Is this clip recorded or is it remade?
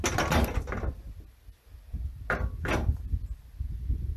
recorded